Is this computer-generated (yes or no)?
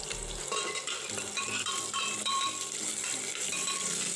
yes